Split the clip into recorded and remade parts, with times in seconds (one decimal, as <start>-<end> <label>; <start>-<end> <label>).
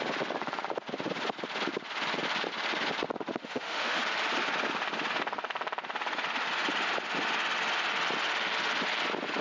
0.0-3.4 recorded; 3.4-4.0 remade; 4.0-9.4 recorded